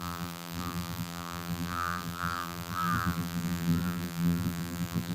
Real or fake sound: fake